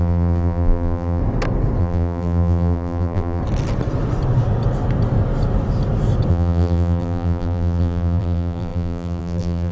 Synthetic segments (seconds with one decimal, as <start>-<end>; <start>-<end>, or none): 0.0-1.2; 1.8-3.4; 6.3-9.7